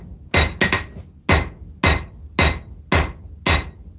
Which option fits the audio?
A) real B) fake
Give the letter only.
A